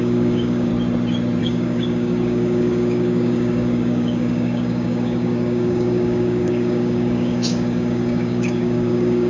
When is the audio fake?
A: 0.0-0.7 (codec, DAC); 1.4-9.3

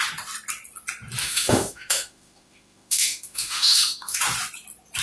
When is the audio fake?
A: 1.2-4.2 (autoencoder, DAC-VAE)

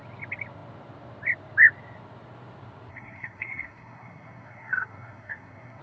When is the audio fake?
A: 2.9-5.8 (codec, SNAC)

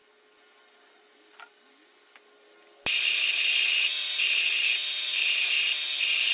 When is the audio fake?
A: none